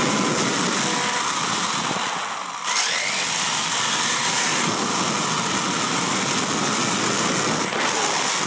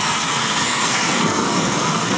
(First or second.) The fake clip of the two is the second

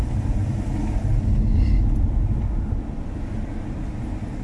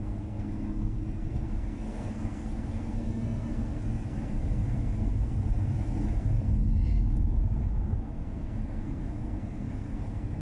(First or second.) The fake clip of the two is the second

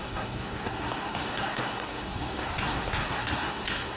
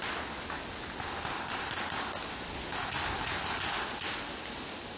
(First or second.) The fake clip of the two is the first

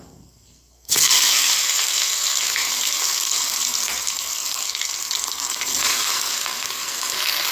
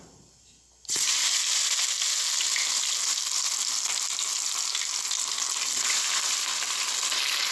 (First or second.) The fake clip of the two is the first